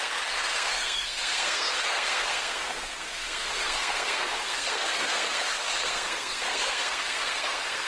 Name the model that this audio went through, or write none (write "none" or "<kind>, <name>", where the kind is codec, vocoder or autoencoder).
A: codec, SNAC